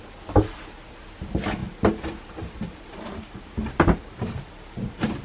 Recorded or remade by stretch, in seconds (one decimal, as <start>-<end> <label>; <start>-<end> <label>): 0.0-5.2 recorded